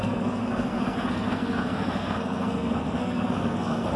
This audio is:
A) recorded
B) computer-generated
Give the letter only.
B